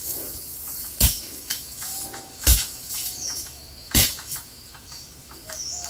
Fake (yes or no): yes